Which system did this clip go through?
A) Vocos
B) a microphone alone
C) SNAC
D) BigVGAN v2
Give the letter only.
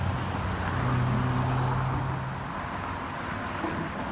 B